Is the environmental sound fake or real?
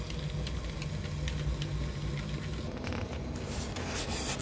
real